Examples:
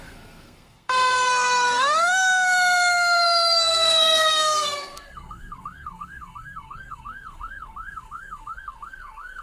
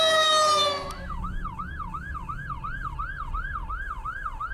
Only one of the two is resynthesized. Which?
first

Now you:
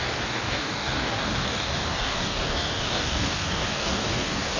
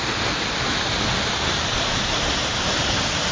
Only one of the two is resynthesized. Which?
first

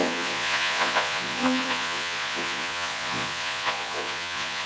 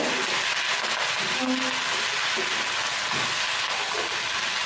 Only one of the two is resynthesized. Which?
first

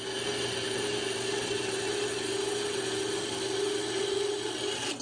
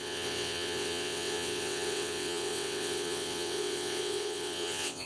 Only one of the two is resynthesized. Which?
second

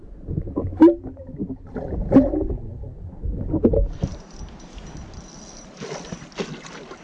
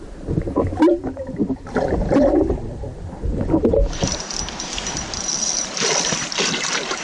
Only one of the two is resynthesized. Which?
second